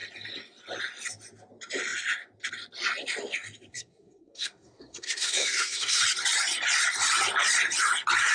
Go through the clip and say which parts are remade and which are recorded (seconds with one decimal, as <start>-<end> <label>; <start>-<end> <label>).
0.0-3.7 recorded; 3.7-6.0 remade; 6.0-8.3 recorded